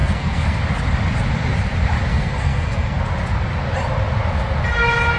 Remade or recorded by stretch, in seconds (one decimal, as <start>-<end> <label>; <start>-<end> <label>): 0.0-0.6 remade; 0.6-2.1 recorded; 2.1-3.0 remade; 3.0-5.2 recorded